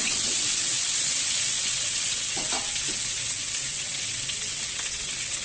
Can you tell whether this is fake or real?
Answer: fake